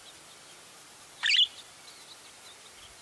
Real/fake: real